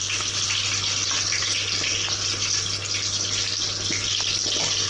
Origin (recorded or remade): recorded